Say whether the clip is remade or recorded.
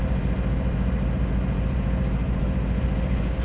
recorded